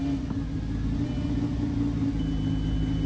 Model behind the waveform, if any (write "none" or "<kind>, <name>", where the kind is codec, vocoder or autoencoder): none